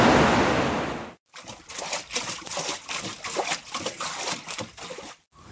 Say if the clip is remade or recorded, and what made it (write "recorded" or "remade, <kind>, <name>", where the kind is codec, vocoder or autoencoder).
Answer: recorded